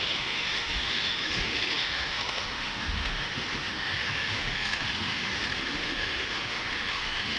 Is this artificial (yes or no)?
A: yes